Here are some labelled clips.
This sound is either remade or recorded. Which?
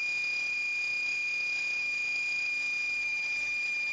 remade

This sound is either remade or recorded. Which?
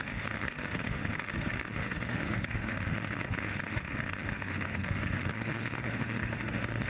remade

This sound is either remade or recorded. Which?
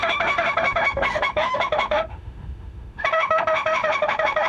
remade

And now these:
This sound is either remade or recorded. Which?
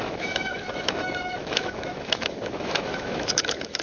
remade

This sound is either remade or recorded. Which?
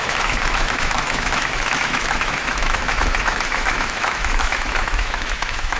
remade